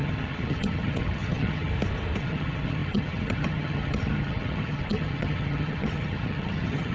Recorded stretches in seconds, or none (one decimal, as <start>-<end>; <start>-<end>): 1.7-2.2